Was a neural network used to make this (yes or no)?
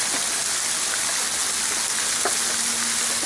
no